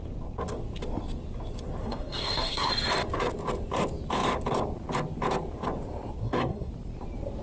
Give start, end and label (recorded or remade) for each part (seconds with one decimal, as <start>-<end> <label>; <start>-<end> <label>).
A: 0.0-1.8 recorded; 1.8-2.7 remade; 2.7-6.2 recorded; 6.2-6.7 remade; 6.7-7.4 recorded